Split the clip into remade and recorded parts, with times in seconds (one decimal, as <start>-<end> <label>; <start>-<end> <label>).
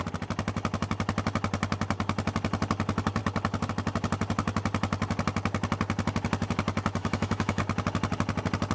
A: 0.0-7.0 recorded; 7.0-7.6 remade; 7.6-8.7 recorded